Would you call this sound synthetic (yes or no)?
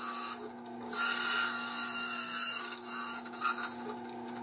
yes